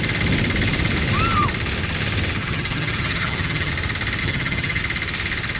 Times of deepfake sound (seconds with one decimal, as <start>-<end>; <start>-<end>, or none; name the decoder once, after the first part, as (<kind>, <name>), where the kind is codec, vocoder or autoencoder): 2.4-3.7 (vocoder, HiFi-GAN); 4.2-4.8